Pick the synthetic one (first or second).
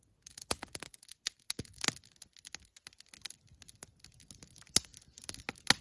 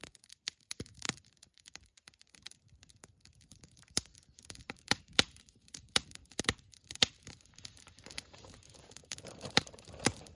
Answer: second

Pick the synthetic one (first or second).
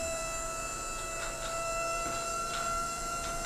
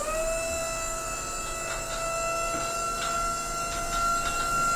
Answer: first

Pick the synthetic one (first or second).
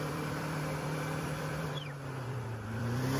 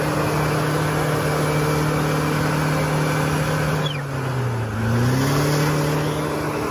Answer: first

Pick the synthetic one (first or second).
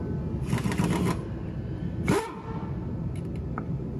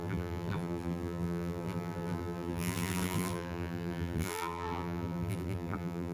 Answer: second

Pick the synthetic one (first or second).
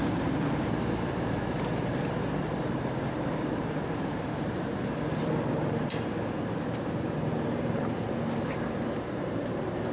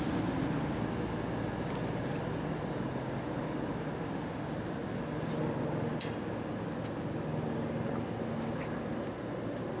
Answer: first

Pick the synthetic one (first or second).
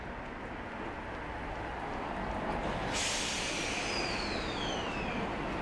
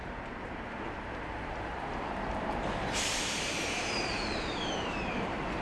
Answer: second